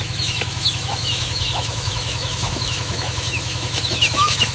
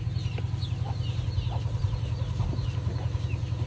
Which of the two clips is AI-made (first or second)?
first